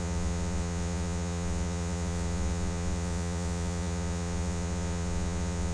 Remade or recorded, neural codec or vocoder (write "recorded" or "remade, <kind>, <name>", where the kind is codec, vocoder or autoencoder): remade, vocoder, Vocos